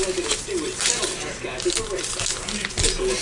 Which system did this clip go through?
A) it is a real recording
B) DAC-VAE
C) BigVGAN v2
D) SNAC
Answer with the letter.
A